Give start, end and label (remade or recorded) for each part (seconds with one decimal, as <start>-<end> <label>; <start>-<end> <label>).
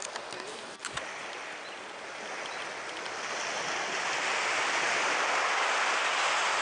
0.0-6.6 recorded